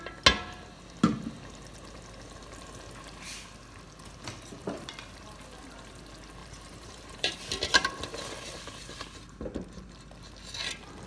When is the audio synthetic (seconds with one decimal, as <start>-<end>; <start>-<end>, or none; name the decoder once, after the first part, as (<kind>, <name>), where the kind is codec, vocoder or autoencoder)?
6.4-7.3 (vocoder, BigVGAN v2)